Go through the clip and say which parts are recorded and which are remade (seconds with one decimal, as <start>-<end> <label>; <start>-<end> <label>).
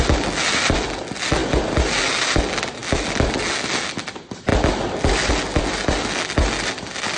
0.0-4.5 recorded; 4.5-5.3 remade; 5.3-7.2 recorded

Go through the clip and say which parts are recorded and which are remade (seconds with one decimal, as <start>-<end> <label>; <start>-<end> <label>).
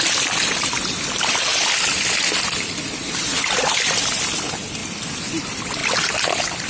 0.0-4.8 remade; 4.8-5.3 recorded; 5.3-5.8 remade; 5.8-6.7 recorded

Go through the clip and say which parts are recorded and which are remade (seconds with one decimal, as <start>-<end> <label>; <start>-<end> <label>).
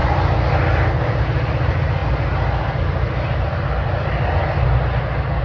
0.0-5.4 recorded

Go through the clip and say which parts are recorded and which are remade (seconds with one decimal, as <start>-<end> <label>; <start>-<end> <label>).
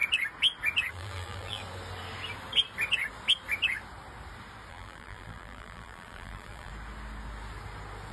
0.0-0.9 recorded; 0.9-1.6 remade; 1.6-4.7 recorded; 4.7-6.7 remade; 6.7-8.1 recorded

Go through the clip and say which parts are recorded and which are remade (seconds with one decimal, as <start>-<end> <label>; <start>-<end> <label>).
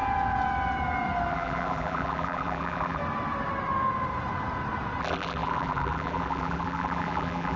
0.0-1.3 recorded; 1.3-3.0 remade; 3.0-5.0 recorded; 5.0-7.6 remade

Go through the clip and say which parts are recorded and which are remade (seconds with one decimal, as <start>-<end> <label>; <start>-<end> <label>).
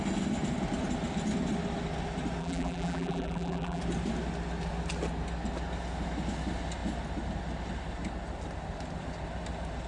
0.0-2.4 recorded; 2.4-3.8 remade; 3.8-9.9 recorded